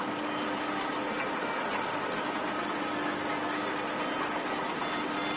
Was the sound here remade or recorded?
recorded